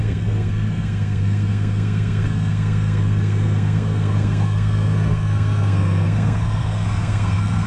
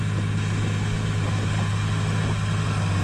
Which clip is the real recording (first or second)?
second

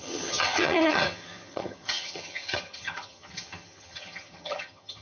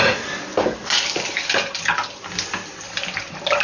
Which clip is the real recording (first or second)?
second